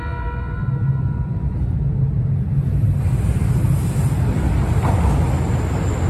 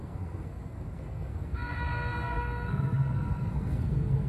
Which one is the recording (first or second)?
first